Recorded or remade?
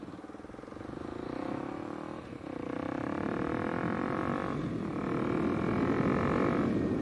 recorded